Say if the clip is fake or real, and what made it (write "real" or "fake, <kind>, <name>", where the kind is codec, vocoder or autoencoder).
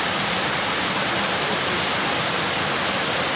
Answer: real